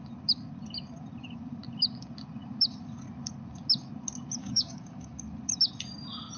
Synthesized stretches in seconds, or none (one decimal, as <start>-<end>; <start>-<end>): 4.4-5.2